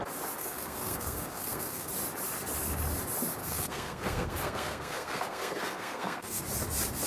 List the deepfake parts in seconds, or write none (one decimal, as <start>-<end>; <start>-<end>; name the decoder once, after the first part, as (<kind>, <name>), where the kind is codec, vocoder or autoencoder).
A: 0.4-1.9 (codec, SNAC); 3.4-6.4